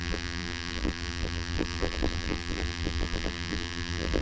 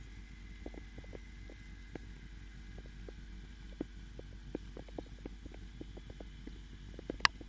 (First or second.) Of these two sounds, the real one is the second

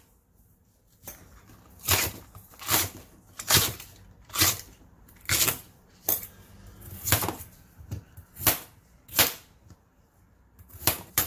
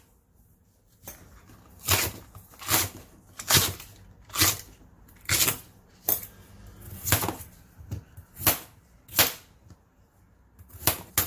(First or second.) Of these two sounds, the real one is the second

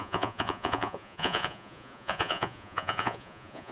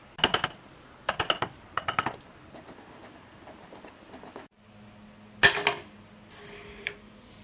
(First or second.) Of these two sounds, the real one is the second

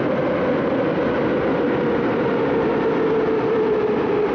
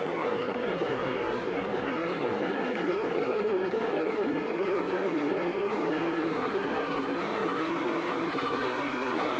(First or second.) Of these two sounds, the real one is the first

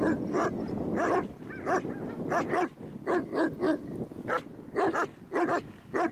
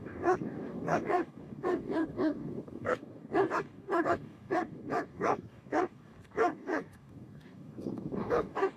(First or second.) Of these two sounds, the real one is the first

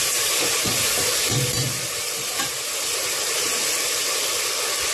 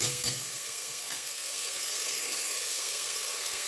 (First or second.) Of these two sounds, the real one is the first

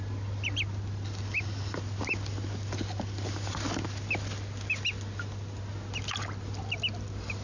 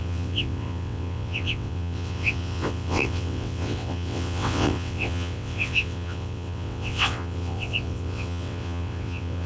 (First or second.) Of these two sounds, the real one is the first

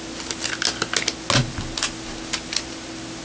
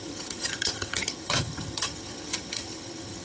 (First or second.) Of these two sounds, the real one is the first